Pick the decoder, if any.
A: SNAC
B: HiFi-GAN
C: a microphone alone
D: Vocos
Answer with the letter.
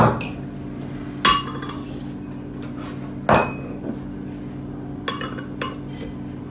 C